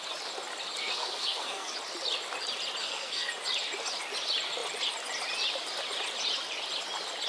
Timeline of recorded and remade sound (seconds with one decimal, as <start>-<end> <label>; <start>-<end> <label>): 0.0-0.8 recorded; 0.8-1.7 remade; 1.7-2.8 recorded; 2.8-3.3 remade; 3.3-7.3 recorded